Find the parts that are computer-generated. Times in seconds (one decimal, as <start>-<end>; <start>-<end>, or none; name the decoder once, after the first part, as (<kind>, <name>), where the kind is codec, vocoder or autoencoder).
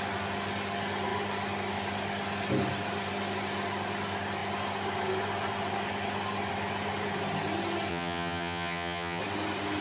7.9-9.2 (vocoder, HiFi-GAN)